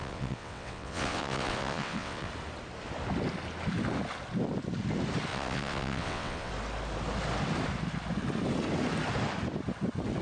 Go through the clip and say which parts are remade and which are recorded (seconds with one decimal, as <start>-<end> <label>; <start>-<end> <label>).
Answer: 0.0-2.3 remade; 2.3-5.3 recorded; 5.3-6.5 remade; 6.5-10.2 recorded